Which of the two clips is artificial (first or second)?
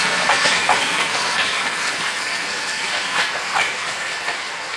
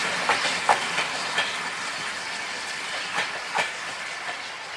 first